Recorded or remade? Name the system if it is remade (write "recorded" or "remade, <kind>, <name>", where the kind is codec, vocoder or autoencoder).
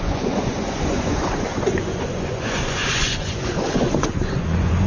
remade, vocoder, Vocos